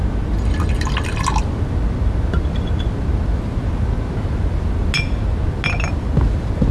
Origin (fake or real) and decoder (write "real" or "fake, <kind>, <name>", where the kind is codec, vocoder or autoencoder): real